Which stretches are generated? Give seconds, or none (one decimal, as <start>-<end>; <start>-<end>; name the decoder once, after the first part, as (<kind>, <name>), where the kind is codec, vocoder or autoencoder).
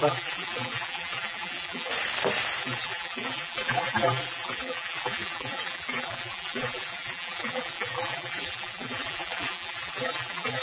0.0-1.9 (vocoder, BigVGAN v2); 2.6-10.6